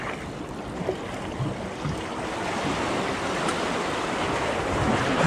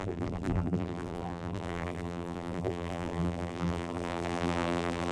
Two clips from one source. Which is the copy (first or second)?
second